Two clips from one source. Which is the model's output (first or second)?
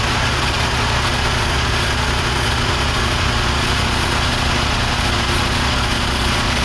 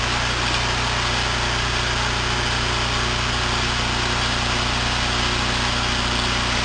first